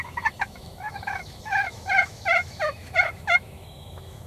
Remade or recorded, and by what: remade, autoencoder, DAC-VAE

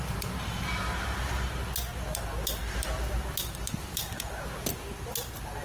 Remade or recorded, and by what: recorded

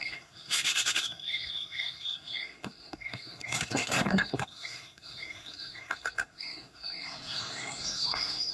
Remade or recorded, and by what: remade, codec, SNAC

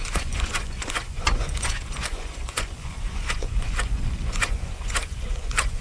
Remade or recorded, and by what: remade, vocoder, Vocos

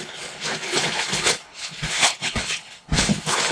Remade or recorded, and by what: remade, codec, HILCodec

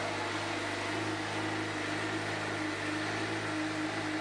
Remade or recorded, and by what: recorded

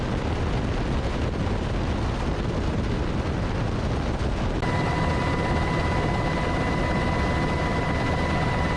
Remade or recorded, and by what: recorded